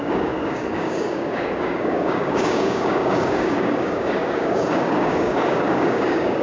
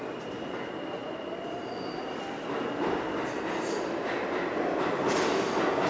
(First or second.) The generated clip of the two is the first